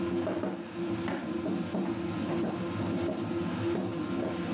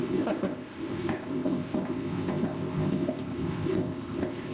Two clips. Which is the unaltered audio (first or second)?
first